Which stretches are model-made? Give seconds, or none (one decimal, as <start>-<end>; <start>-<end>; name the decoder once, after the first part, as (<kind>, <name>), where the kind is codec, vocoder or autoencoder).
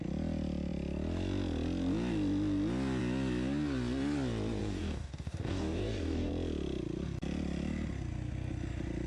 4.6-6.3 (codec, DAC)